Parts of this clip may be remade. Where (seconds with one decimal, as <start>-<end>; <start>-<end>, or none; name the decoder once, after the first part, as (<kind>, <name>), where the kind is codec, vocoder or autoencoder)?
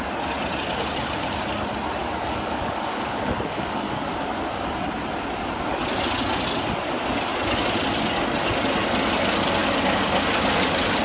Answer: 2.0-4.1 (codec, DAC)